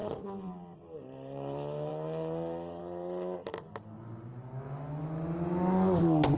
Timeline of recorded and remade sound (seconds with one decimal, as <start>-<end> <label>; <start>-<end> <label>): 0.0-1.9 remade; 1.9-2.8 recorded; 2.8-3.7 remade; 3.7-6.4 recorded